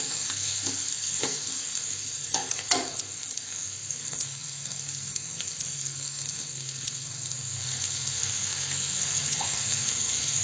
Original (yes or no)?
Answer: no